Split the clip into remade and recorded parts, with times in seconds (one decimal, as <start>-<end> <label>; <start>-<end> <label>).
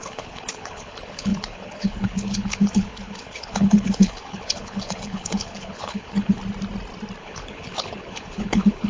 0.0-6.4 remade; 6.4-7.2 recorded; 7.2-8.9 remade